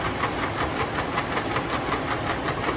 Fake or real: real